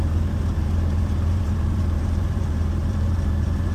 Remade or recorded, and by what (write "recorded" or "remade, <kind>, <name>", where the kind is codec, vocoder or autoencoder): remade, vocoder, BigVGAN v2